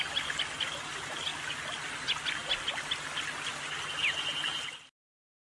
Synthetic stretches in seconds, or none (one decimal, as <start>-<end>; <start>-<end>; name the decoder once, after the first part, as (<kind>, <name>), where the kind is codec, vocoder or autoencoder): none